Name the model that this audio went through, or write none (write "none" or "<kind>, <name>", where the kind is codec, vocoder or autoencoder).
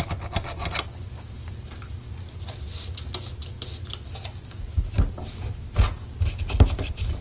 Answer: none